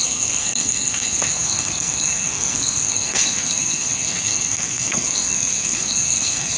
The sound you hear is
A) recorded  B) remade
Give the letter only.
B